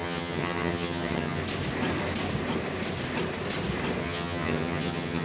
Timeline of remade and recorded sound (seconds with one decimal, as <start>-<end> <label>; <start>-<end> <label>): 0.0-1.4 remade; 1.4-4.0 recorded; 4.0-5.2 remade